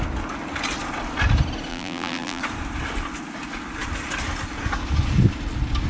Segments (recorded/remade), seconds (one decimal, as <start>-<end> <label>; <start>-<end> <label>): 0.0-1.7 recorded; 1.7-2.4 remade; 2.4-5.9 recorded